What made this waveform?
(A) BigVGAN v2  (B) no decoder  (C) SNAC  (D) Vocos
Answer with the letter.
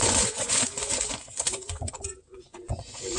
D